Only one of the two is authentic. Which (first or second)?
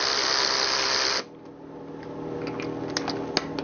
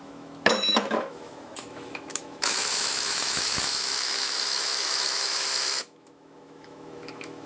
first